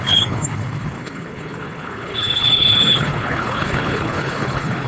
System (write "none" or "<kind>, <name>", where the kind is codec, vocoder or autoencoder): codec, HILCodec